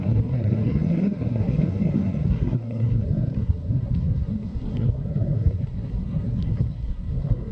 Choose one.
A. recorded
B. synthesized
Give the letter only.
B